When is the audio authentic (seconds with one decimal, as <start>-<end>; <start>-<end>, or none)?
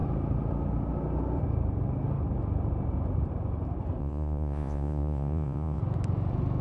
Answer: 0.0-4.0; 5.8-6.6